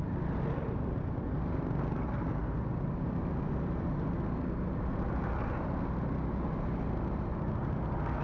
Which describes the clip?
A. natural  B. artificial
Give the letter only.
A